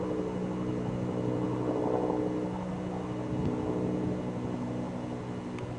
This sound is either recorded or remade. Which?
recorded